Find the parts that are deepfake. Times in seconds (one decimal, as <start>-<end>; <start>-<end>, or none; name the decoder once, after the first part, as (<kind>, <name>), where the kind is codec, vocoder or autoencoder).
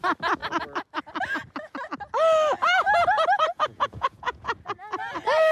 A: 3.4-4.4 (vocoder, Vocos)